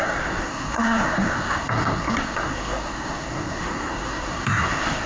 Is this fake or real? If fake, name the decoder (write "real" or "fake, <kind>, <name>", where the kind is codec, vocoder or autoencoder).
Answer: fake, codec, SNAC